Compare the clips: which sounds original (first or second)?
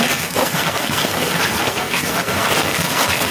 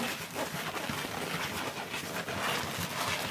second